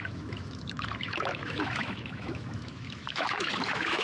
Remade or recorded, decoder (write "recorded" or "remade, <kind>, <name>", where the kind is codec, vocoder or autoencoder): remade, autoencoder, DAC-VAE